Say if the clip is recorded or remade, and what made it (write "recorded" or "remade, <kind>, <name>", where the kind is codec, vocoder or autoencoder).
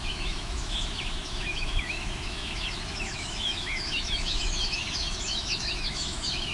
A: remade, autoencoder, DAC-VAE